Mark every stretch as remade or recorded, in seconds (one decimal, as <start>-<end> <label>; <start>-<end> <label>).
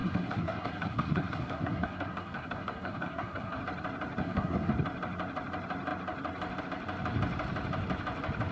0.0-3.6 remade; 3.6-4.2 recorded; 4.2-4.7 remade; 4.7-8.5 recorded